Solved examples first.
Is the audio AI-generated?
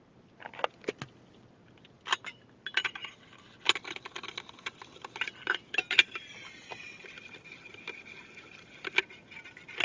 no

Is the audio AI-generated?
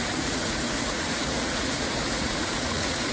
yes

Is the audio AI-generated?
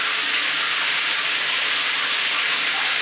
no